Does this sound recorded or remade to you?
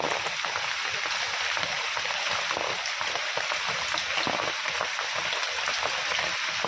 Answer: recorded